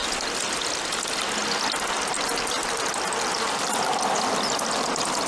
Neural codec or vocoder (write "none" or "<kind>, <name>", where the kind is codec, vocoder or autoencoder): none